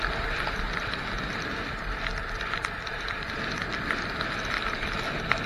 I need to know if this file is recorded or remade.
recorded